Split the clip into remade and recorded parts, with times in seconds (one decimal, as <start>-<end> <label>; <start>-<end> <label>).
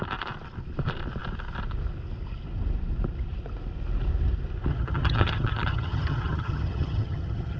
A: 0.0-4.7 recorded; 4.7-7.6 remade